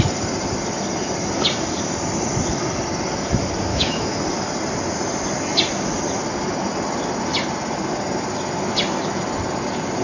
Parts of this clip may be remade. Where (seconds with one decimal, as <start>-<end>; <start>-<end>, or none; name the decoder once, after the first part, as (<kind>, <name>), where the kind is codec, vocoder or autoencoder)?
3.7-4.2 (autoencoder, DAC-VAE)